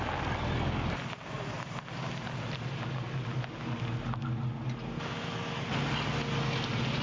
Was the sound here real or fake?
real